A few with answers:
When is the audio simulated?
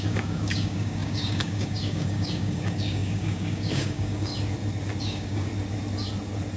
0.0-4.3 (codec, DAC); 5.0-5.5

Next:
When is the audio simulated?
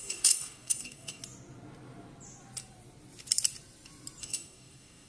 0.0-1.2 (codec, DAC); 4.2-5.1